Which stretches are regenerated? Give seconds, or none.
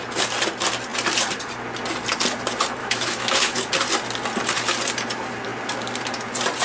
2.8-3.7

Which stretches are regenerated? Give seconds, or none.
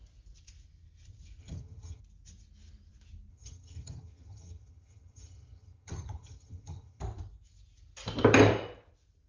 1.4-2.0; 3.3-7.0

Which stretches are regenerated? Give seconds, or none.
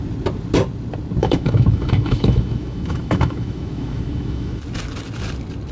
1.2-4.6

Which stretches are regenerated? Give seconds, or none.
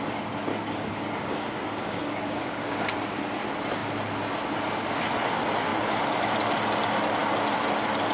0.5-2.9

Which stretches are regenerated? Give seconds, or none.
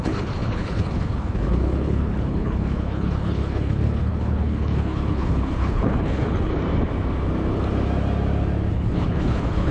0.0-6.5; 8.7-9.7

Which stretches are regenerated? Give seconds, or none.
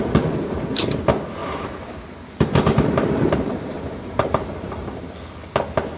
1.4-5.0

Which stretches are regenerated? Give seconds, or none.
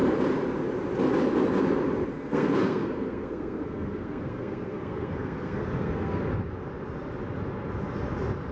2.1-6.2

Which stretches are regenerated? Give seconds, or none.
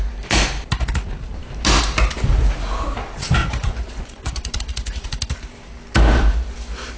3.4-4.6